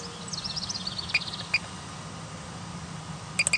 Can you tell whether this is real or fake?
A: real